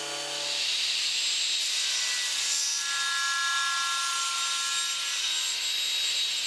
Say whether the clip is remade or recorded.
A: recorded